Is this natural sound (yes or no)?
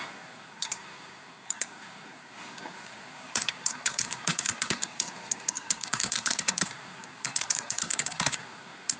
no